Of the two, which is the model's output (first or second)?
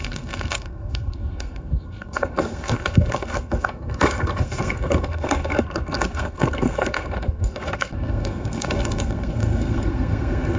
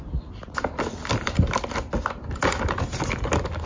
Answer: first